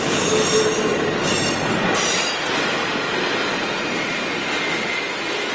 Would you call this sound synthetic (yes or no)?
no